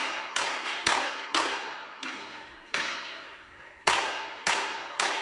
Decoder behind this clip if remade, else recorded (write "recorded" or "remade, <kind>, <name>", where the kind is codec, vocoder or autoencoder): remade, codec, SNAC